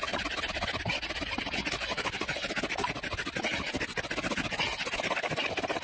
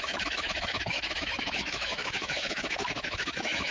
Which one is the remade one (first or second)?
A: second